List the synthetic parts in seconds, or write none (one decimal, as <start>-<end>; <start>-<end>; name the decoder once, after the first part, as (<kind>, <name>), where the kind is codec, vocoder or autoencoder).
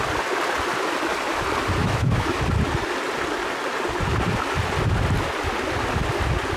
1.8-2.4 (autoencoder, DAC-VAE)